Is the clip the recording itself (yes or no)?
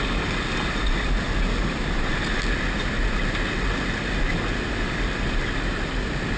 yes